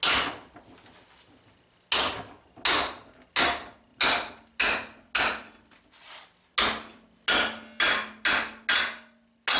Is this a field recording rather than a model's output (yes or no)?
yes